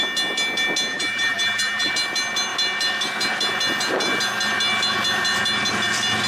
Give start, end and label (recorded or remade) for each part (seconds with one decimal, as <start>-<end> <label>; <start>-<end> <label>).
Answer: 0.0-0.9 recorded; 0.9-1.9 remade; 1.9-6.3 recorded